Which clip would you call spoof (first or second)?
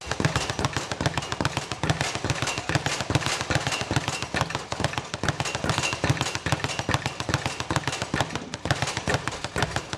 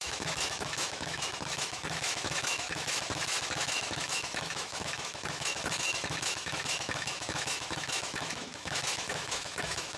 second